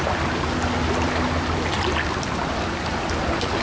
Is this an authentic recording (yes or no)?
yes